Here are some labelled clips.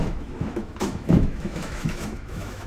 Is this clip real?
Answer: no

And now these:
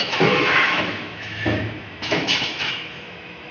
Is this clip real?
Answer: no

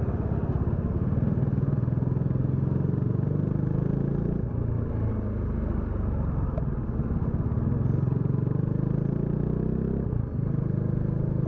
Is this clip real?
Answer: yes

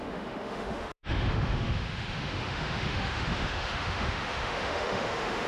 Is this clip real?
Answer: no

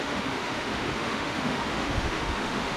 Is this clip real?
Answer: no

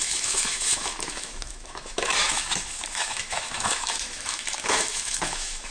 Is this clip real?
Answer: no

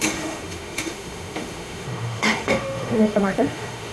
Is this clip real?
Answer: no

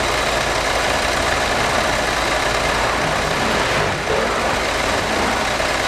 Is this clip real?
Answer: yes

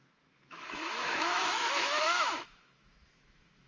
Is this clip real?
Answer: no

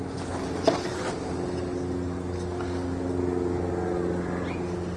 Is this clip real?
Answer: yes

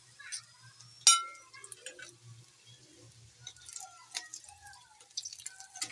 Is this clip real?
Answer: yes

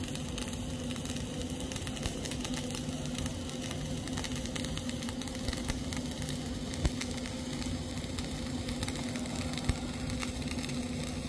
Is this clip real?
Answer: yes